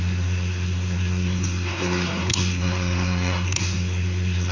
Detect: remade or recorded remade